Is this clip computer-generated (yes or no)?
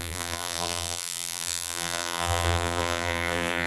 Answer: yes